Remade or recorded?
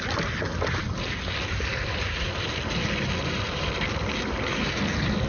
recorded